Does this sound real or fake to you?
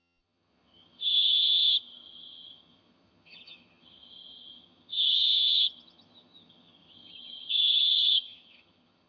fake